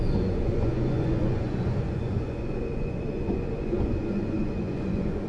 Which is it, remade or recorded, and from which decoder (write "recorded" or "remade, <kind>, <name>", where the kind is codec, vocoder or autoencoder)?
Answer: remade, vocoder, Vocos